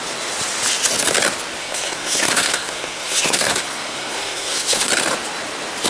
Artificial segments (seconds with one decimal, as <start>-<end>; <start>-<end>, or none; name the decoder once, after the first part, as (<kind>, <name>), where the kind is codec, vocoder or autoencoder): 1.6-4.9 (codec, SNAC)